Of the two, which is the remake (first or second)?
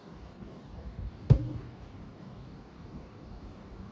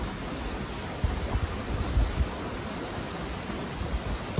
first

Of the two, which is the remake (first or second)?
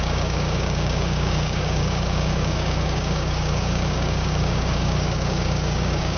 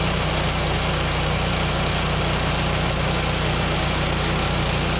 first